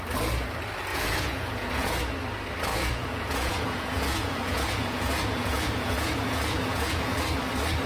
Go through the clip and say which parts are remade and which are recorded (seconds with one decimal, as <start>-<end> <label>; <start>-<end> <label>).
0.0-0.9 recorded; 0.9-2.0 remade; 2.0-2.7 recorded; 2.7-7.2 remade; 7.2-7.9 recorded

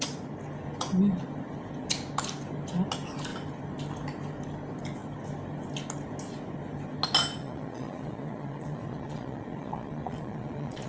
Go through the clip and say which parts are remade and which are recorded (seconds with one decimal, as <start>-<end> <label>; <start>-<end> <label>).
0.0-7.4 recorded; 7.4-10.9 remade

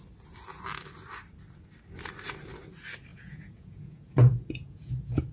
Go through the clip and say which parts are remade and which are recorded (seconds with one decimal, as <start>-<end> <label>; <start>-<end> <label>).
0.0-3.1 recorded; 3.1-5.3 remade